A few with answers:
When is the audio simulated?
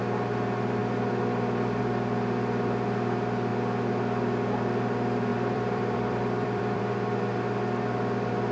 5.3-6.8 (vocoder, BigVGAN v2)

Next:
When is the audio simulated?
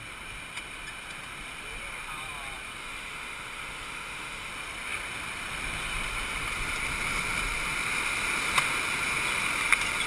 2.8-4.5 (autoencoder, DAC-VAE)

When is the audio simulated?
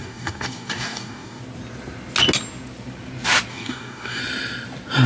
0.0-1.4 (codec, DAC); 3.5-4.2